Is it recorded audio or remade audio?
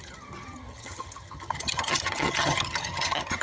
remade